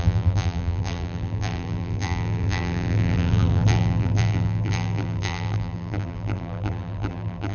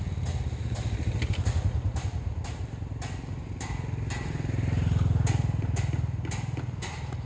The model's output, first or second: first